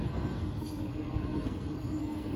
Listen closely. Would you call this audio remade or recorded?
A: remade